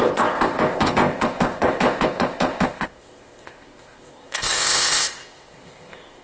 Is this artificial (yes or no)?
yes